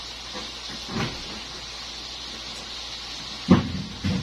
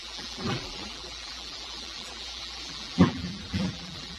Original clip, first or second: first